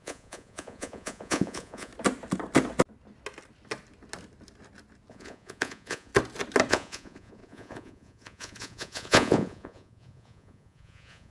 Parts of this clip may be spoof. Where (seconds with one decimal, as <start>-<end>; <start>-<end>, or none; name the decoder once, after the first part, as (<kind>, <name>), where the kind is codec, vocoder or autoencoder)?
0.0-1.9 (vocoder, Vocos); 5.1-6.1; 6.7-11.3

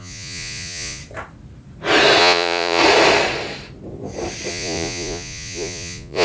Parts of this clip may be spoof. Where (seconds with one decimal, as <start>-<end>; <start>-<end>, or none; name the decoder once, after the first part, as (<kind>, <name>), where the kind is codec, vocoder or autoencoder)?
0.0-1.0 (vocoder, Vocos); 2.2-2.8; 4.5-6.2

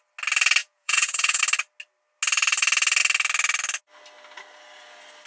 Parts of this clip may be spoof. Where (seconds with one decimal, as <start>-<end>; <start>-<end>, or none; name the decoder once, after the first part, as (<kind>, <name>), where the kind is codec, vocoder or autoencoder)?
0.6-1.4 (vocoder, Vocos)

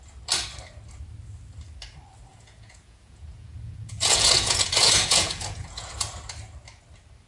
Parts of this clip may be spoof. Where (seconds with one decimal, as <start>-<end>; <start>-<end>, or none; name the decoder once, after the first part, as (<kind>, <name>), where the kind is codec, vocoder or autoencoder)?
2.3-5.9 (vocoder, Vocos)